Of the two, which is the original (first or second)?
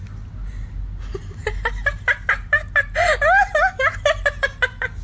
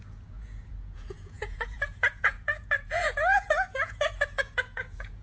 first